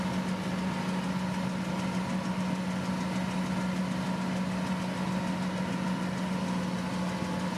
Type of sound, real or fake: real